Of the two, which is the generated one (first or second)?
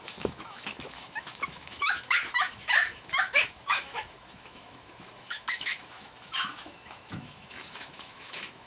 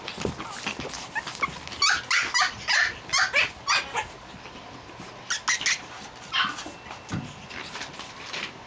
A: first